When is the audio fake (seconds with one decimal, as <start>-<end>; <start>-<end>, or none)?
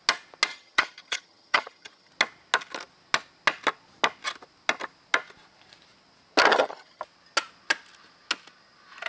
0.5-2.1; 6.5-7.0